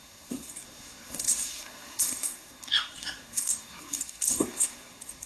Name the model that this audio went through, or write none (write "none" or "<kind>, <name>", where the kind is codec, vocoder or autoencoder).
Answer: codec, SNAC